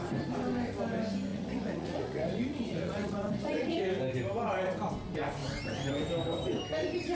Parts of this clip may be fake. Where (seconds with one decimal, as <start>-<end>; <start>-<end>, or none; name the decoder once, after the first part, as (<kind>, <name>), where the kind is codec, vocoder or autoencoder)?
1.3-3.8 (vocoder, Vocos)